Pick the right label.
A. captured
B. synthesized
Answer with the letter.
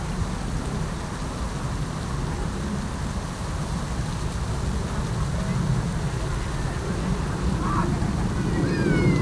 A